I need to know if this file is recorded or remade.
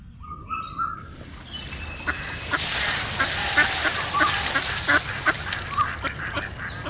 recorded